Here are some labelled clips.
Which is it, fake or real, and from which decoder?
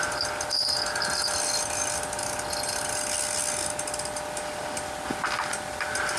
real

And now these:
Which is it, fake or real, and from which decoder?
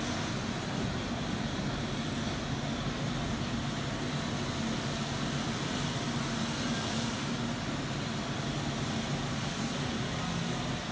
real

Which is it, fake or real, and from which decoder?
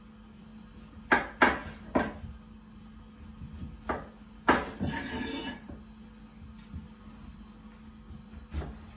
real